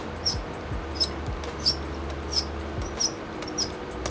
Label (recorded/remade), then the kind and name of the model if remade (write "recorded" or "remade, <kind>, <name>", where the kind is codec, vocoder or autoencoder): recorded